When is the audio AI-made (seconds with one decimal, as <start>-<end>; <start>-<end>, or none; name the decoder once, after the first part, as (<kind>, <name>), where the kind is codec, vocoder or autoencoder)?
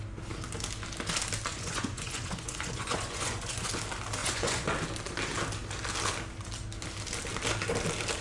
1.5-3.7 (vocoder, Vocos); 4.2-4.7